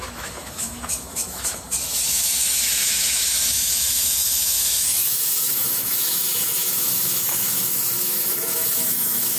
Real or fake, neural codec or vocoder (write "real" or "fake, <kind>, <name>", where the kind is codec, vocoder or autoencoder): fake, autoencoder, DAC-VAE